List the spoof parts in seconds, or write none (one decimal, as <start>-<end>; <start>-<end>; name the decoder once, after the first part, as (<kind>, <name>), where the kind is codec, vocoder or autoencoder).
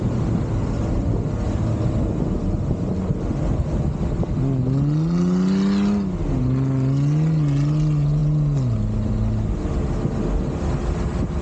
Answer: none